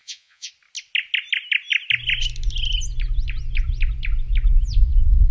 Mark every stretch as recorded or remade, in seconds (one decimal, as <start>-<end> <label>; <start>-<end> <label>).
0.0-0.5 remade; 0.5-5.3 recorded